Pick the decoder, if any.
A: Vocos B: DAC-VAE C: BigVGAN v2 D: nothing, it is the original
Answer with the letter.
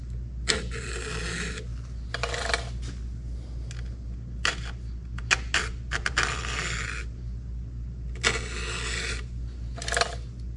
D